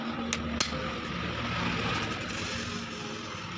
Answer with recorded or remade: recorded